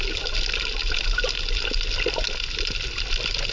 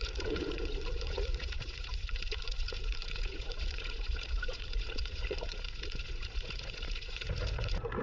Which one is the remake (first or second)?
second